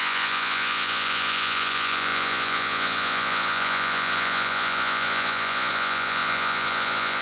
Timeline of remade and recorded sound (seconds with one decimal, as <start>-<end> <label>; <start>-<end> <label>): 0.0-7.2 remade